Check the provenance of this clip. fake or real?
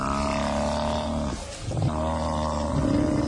real